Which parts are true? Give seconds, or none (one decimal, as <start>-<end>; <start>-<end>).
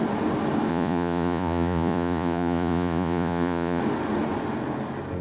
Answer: 0.0-0.7; 3.8-5.2